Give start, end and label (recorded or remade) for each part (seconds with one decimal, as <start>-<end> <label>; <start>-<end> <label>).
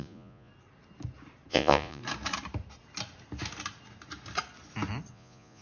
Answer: 0.0-0.5 remade; 0.5-1.5 recorded; 1.5-2.0 remade; 2.0-5.1 recorded; 5.1-5.6 remade